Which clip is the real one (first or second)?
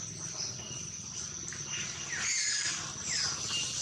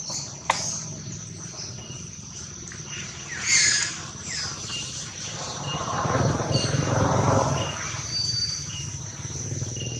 first